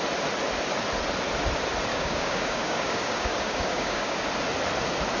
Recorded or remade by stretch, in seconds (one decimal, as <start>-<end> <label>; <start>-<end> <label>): 0.0-1.9 recorded; 1.9-4.2 remade; 4.2-5.2 recorded